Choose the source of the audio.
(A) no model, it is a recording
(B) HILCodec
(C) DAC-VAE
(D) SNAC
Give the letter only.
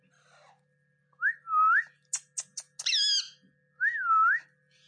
A